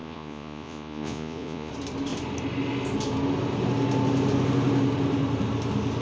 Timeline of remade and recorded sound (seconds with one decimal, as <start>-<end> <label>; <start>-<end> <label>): 0.0-1.7 remade; 1.7-6.0 recorded